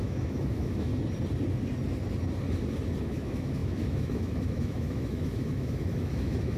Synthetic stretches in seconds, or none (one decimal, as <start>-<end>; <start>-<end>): 0.0-0.9; 3.0-6.6